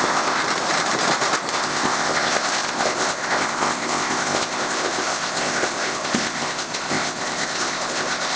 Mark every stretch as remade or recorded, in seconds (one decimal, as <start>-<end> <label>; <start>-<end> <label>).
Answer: 0.0-0.4 remade; 0.4-1.5 recorded; 1.5-8.4 remade